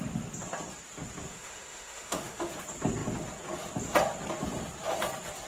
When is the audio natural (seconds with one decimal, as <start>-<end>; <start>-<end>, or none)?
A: 0.0-1.3; 2.5-5.5